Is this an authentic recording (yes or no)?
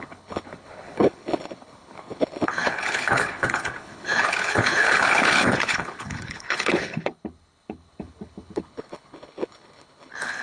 no